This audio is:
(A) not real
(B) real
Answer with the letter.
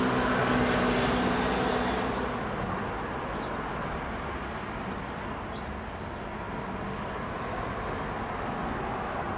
B